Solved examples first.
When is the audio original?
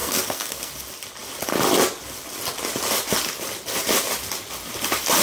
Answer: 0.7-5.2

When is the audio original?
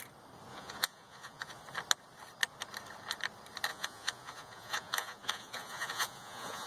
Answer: 0.0-0.5; 1.6-3.7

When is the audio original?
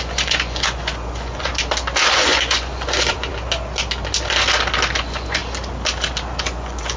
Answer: 1.5-2.1; 3.3-5.0; 5.4-6.4